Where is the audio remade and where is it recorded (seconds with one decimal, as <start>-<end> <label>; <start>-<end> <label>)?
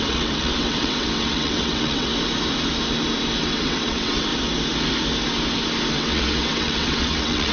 0.0-2.1 remade; 2.1-3.4 recorded; 3.4-4.3 remade; 4.3-5.9 recorded; 5.9-7.5 remade